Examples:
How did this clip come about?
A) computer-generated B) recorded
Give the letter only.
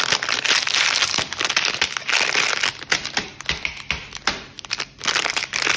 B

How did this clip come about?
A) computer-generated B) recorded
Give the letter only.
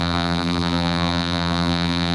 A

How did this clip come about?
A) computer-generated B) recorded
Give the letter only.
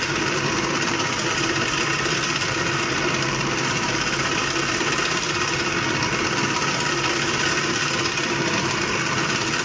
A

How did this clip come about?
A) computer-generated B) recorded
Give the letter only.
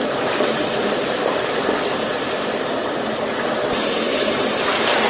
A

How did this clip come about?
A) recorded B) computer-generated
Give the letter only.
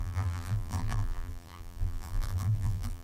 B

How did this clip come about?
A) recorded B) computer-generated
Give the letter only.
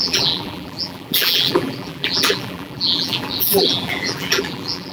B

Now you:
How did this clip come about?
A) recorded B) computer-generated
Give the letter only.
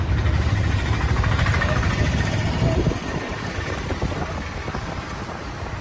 B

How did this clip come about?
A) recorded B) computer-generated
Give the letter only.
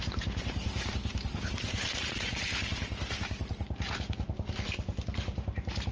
B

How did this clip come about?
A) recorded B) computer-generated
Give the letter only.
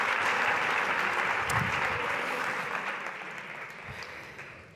A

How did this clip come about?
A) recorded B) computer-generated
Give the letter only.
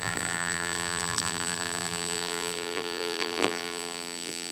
B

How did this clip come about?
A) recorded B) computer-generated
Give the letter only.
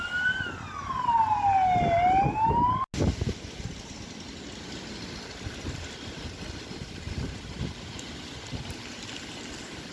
A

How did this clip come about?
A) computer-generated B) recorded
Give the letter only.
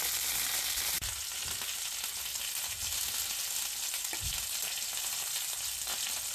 B